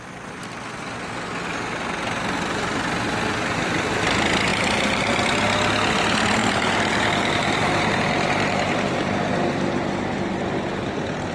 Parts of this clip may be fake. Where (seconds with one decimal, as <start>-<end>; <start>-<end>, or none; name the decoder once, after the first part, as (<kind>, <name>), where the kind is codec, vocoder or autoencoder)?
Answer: 4.5-5.2 (vocoder, BigVGAN v2); 6.4-9.1